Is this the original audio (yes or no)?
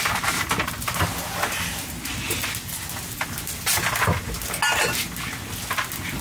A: yes